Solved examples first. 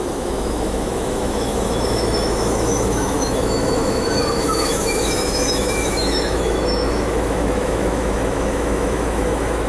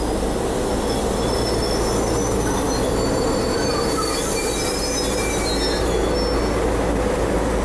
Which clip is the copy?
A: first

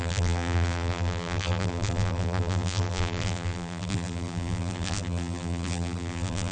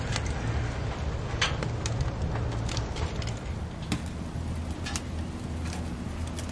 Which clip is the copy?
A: first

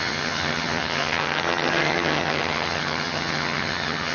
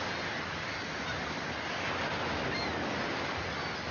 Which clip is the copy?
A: first